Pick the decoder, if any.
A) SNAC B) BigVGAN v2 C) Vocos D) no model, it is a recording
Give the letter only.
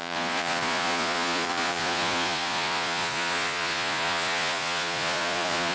C